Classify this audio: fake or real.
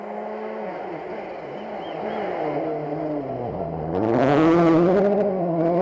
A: real